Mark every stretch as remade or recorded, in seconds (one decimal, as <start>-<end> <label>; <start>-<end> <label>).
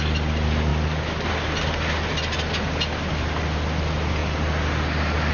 0.0-5.3 recorded